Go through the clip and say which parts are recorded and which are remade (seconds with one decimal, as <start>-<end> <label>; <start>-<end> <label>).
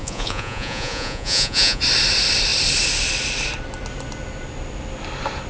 0.0-1.8 remade; 1.8-5.5 recorded